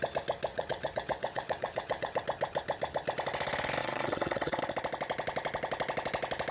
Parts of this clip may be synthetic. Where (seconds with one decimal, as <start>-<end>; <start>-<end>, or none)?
0.5-2.2; 3.8-4.6